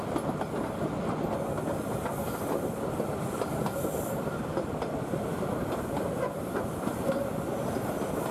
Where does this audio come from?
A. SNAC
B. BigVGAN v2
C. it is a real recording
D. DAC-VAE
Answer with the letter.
C